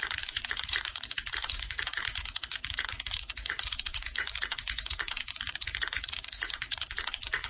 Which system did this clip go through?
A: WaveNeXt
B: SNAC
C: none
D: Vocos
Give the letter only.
D